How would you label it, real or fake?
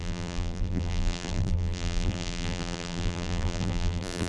fake